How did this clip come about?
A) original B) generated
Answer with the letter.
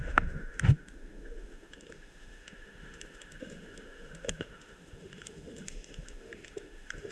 B